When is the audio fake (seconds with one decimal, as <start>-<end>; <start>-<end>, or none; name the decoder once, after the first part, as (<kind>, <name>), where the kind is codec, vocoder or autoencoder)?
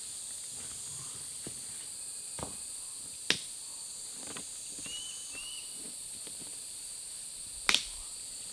none